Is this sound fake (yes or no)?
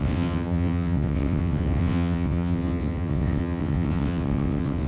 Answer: yes